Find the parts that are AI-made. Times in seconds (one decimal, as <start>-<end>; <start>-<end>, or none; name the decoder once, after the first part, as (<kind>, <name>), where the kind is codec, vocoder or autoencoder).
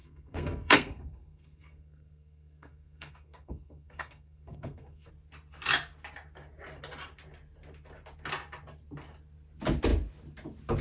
0.0-5.1 (codec, SNAC)